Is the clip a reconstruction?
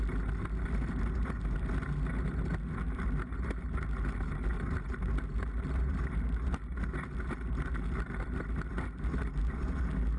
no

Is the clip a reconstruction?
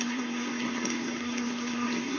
yes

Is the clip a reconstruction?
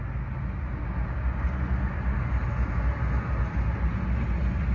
no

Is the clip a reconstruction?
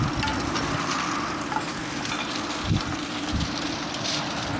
no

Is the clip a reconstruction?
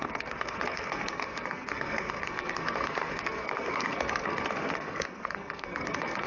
yes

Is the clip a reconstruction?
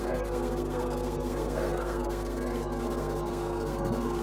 yes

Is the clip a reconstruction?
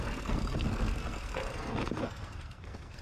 yes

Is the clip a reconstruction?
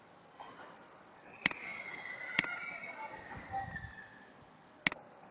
no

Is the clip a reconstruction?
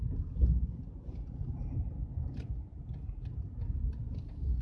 no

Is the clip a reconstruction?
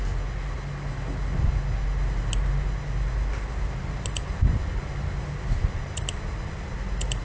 no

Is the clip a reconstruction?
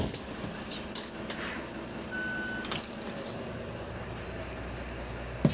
no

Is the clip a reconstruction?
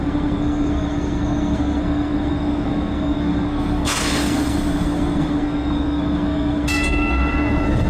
yes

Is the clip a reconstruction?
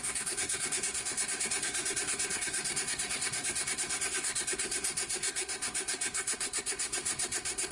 yes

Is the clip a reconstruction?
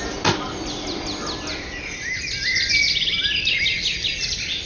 no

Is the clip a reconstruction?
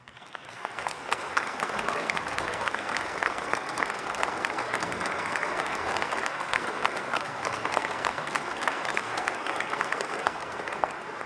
yes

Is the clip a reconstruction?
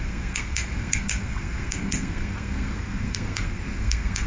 yes